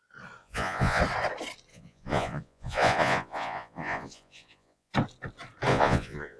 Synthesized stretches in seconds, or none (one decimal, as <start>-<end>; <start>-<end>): 0.4-1.0; 1.7-4.9; 5.7-6.4